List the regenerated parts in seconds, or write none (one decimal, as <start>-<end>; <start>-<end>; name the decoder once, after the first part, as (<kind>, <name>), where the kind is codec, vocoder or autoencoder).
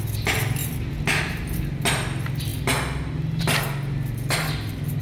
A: none